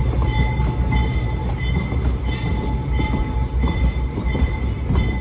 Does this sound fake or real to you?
real